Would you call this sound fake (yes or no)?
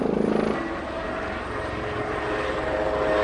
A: no